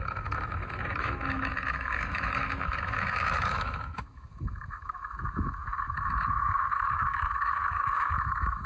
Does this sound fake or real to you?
fake